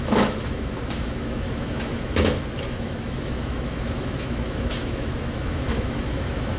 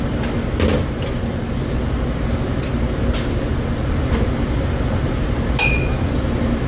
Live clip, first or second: second